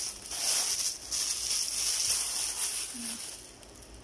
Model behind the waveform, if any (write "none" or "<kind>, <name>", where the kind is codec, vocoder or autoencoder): none